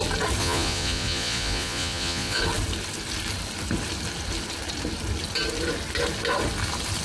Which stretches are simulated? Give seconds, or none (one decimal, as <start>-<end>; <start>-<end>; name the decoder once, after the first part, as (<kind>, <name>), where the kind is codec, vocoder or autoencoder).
0.4-2.4 (vocoder, Vocos)